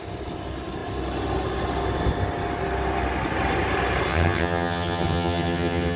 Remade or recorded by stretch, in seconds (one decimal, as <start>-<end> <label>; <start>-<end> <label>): 0.0-4.1 recorded; 4.1-6.0 remade